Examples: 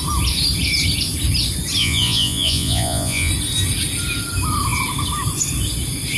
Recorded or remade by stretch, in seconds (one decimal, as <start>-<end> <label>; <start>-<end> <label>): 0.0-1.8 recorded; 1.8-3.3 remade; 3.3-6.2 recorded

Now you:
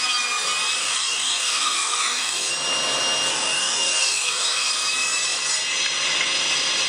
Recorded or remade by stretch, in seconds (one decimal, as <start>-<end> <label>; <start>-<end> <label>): 0.0-0.8 recorded; 0.8-2.5 remade; 2.5-3.3 recorded; 3.3-4.7 remade; 4.7-6.9 recorded

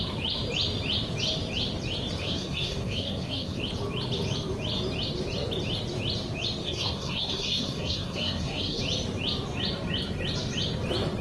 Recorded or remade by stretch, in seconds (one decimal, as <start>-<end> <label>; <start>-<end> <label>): 0.0-2.2 recorded; 2.2-3.6 remade; 3.6-6.6 recorded; 6.6-8.8 remade; 8.8-11.2 recorded

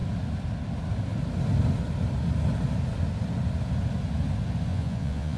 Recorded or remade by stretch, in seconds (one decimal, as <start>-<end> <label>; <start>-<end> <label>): 0.0-4.7 recorded; 4.7-5.4 remade

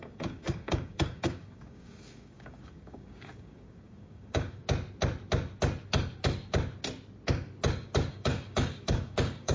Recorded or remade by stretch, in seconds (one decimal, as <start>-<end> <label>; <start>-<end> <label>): 0.0-4.6 remade; 4.6-8.1 recorded; 8.1-9.5 remade

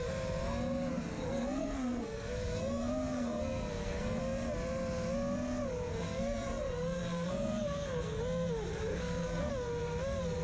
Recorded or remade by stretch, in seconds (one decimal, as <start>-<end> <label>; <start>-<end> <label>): 0.0-0.9 recorded; 0.9-4.2 remade; 4.2-5.9 recorded; 5.9-8.2 remade; 8.2-8.9 recorded; 8.9-9.5 remade; 9.5-10.4 recorded